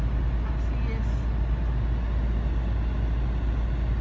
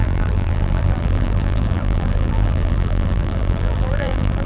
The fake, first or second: second